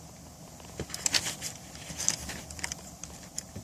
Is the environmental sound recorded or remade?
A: recorded